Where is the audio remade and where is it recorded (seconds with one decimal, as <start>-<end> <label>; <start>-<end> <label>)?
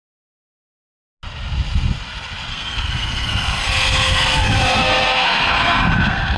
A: 0.0-2.5 recorded; 2.5-6.4 remade